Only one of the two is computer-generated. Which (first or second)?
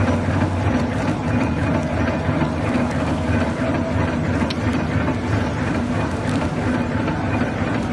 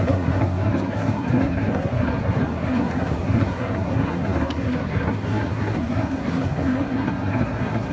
second